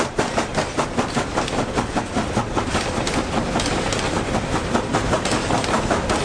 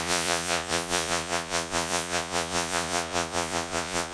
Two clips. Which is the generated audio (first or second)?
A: second